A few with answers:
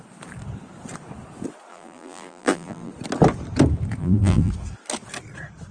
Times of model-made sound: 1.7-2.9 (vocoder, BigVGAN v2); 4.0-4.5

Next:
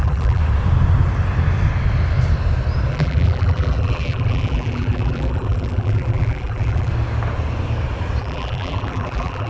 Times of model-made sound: 0.0-0.4 (vocoder, BigVGAN v2); 2.9-6.9; 8.2-9.5

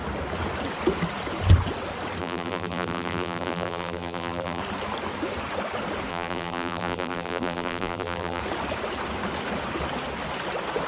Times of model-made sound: 2.2-4.6 (vocoder, BigVGAN v2); 6.1-8.4